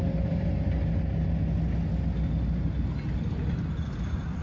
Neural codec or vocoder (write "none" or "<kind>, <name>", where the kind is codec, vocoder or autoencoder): none